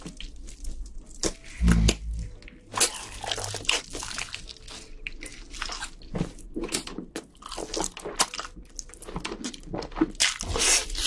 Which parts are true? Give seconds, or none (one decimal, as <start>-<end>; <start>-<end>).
0.0-11.1